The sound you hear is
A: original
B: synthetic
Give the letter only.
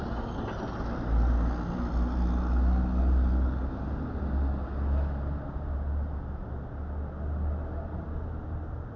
A